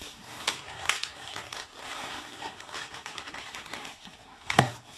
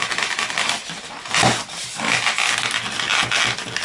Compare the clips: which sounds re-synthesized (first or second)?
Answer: first